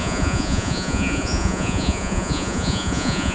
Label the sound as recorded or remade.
remade